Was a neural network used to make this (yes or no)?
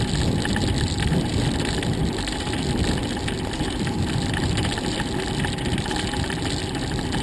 no